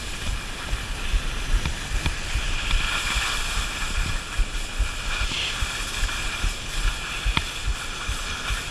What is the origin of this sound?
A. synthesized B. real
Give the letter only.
B